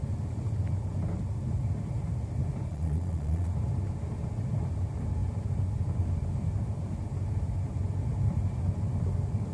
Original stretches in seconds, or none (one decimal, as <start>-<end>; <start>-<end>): 0.0-2.7; 3.5-9.5